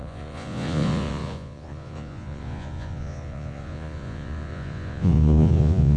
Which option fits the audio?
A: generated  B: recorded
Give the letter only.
A